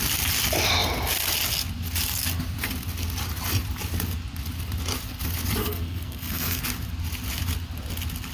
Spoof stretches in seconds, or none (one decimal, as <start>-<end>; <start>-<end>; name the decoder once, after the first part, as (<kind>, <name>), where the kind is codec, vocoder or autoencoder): 5.6-6.6 (codec, SNAC)